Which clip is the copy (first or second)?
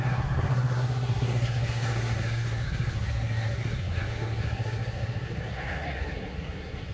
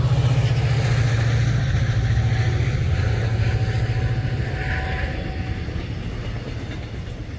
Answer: first